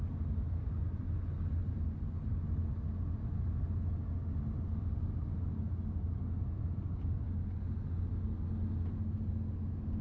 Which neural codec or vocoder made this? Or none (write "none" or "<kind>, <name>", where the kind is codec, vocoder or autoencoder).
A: none